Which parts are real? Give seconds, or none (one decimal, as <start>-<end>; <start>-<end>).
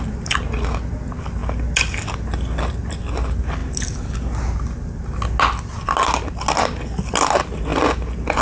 0.0-8.4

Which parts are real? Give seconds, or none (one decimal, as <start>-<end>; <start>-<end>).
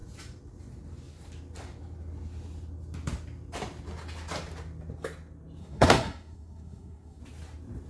0.0-5.6; 7.2-7.9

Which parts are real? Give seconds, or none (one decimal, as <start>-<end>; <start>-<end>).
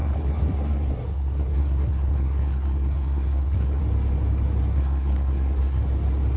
3.8-4.7; 5.8-6.4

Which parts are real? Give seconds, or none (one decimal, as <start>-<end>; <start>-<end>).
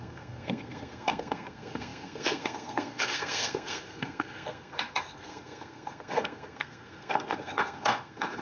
none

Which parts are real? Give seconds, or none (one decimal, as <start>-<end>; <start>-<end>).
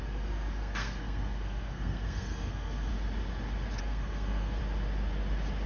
2.9-3.8; 4.6-5.7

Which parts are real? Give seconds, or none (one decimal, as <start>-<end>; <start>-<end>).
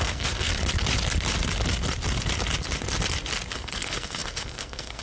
0.5-3.5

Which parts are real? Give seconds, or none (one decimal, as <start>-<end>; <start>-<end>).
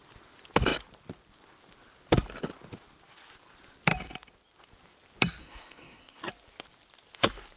0.0-5.4; 6.2-7.6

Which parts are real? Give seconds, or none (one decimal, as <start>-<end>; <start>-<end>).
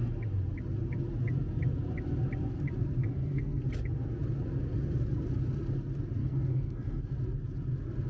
0.0-3.0; 3.6-6.2; 7.0-8.1